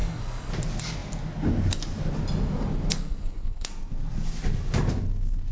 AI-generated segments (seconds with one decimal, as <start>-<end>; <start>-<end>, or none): 0.0-0.5; 2.9-3.7